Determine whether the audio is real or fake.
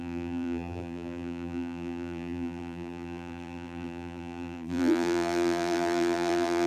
fake